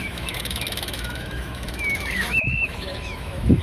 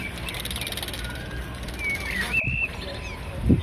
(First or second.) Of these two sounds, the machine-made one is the first